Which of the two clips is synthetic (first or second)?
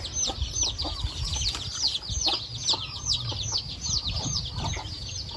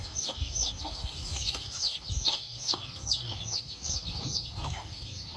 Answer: second